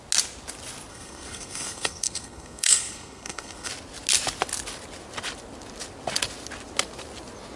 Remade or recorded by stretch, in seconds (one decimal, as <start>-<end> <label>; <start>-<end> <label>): 0.0-0.9 recorded; 0.9-3.7 remade; 3.7-7.6 recorded